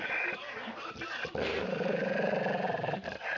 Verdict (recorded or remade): remade